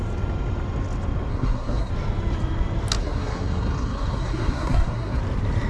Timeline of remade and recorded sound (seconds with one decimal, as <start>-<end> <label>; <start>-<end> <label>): 0.0-1.3 recorded; 1.3-1.9 remade; 1.9-3.0 recorded; 3.0-5.2 remade; 5.2-5.7 recorded